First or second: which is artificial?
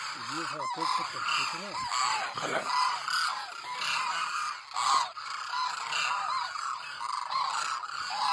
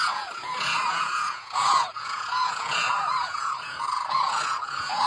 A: second